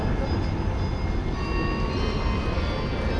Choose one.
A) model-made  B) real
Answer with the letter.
B